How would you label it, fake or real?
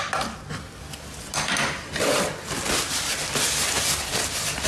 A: real